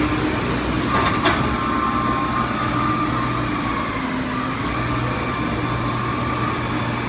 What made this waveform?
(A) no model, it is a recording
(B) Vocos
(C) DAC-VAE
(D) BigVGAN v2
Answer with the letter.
A